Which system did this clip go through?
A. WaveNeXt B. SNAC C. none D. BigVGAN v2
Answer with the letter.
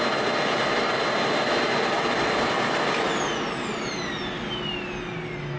C